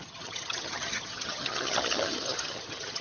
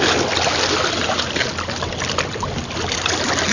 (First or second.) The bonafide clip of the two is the second